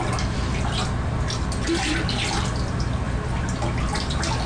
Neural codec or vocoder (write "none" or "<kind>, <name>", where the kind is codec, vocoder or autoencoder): none